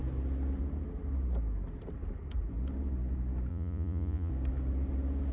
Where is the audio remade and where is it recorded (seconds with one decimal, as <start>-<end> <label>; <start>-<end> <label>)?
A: 0.0-3.5 recorded; 3.5-4.3 remade; 4.3-5.3 recorded